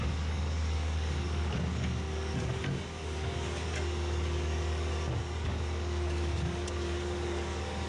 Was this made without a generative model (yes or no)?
no